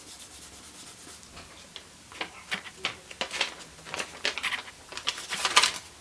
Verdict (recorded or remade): recorded